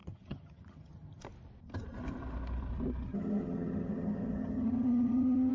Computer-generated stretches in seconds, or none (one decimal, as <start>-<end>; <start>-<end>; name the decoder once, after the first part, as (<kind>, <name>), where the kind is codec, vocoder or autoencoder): 0.0-1.2 (vocoder, HiFi-GAN); 3.1-5.5